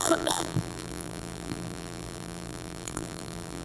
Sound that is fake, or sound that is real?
fake